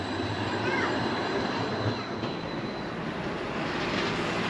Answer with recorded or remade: recorded